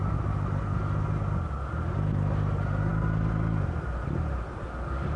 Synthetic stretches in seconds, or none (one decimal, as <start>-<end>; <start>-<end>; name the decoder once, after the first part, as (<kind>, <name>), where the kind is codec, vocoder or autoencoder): none